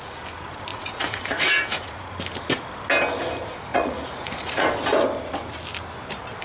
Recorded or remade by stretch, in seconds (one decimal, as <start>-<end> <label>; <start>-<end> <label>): 0.0-0.7 recorded; 0.7-2.1 remade; 2.1-3.7 recorded; 3.7-4.7 remade; 4.7-6.4 recorded

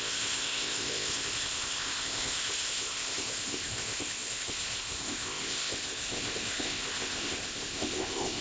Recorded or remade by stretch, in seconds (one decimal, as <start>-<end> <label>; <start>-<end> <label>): 0.0-8.4 remade

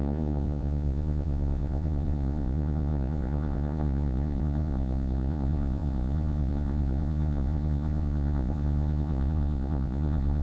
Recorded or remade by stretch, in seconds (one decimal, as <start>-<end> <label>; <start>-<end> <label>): 0.0-10.4 remade

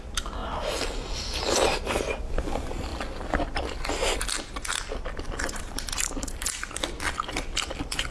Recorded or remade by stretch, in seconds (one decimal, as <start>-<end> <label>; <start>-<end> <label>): 0.0-2.9 recorded; 2.9-5.6 remade; 5.6-8.1 recorded

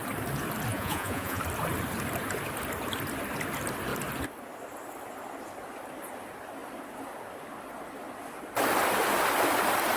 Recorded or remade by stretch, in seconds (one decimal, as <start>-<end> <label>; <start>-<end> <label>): 0.0-0.7 recorded; 0.7-1.4 remade; 1.4-10.0 recorded